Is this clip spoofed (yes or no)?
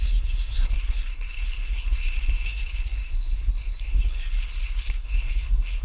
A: yes